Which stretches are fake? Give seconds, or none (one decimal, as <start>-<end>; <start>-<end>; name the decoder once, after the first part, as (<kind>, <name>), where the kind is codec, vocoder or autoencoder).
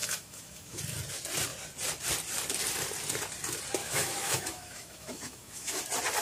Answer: 0.0-0.8 (autoencoder, DAC-VAE); 3.8-5.8